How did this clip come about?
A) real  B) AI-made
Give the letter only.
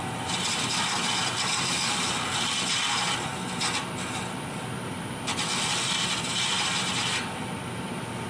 A